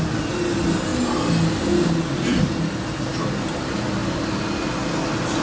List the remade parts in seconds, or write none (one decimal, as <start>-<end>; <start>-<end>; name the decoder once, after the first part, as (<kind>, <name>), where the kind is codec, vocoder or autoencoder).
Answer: none